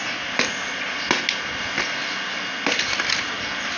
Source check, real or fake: real